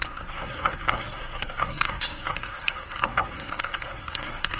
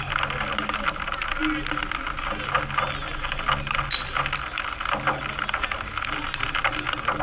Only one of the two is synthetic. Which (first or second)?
first